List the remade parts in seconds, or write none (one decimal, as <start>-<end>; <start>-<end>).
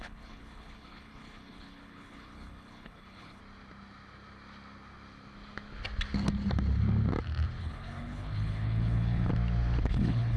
0.0-3.4; 7.6-9.3; 9.9-10.4